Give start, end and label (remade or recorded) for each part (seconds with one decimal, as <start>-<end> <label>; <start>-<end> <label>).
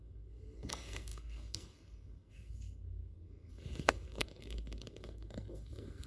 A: 0.0-6.1 remade